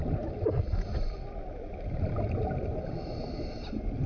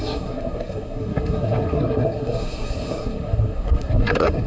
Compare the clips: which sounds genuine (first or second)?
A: first